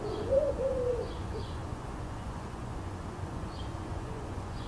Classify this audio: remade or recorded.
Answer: remade